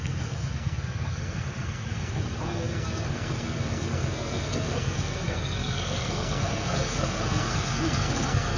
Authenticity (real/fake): fake